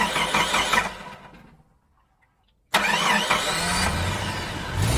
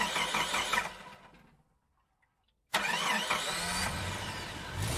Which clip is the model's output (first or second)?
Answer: second